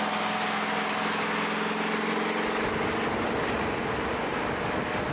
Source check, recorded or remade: recorded